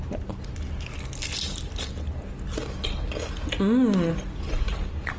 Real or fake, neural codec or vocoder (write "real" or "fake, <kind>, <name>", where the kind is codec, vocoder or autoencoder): real